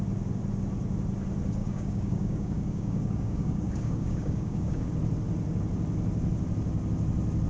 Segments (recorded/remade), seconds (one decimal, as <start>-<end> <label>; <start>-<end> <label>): 0.0-1.6 recorded; 1.6-4.9 remade; 4.9-7.5 recorded

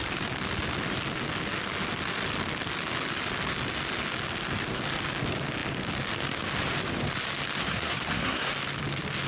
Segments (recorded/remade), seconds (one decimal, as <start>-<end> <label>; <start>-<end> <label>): 0.0-7.6 recorded; 7.6-8.5 remade; 8.5-9.3 recorded

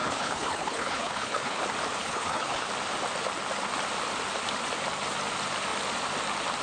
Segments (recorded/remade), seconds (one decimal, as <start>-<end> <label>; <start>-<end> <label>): 0.0-1.6 remade; 1.6-2.0 recorded; 2.0-2.7 remade; 2.7-6.6 recorded

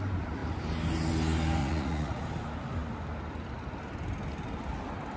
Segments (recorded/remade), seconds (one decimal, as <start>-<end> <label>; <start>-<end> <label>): 0.0-1.6 recorded; 1.6-2.2 remade; 2.2-5.2 recorded

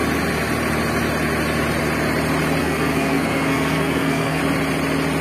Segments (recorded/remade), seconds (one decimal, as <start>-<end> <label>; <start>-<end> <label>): 0.0-2.6 recorded; 2.6-4.4 remade; 4.4-5.2 recorded

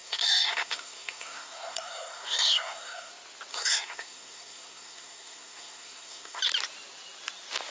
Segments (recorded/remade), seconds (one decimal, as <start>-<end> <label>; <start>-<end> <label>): 0.0-3.1 remade; 3.1-3.5 recorded; 3.5-6.4 remade; 6.4-7.7 recorded

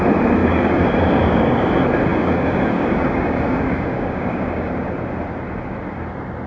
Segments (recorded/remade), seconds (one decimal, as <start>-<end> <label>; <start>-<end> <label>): 0.0-0.4 recorded; 0.4-1.7 remade; 1.7-2.1 recorded; 2.1-4.7 remade; 4.7-6.5 recorded